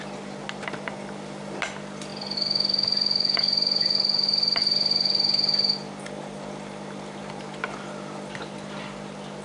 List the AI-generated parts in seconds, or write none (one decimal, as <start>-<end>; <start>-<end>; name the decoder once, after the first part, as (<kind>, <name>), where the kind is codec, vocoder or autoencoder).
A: none